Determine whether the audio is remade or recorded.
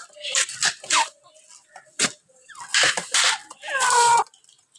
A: recorded